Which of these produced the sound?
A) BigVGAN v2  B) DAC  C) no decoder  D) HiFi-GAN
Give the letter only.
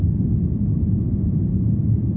C